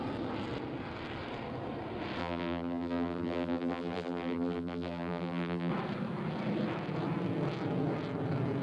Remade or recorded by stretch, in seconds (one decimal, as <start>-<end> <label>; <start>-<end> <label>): 0.0-2.2 recorded; 2.2-5.7 remade; 5.7-8.6 recorded